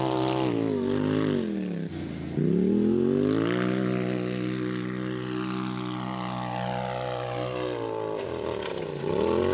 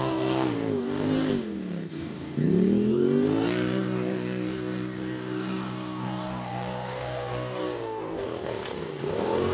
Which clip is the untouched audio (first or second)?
first